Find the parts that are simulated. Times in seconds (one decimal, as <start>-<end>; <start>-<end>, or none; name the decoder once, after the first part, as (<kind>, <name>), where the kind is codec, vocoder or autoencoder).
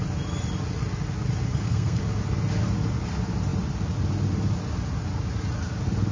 1.5-2.0 (codec, SNAC)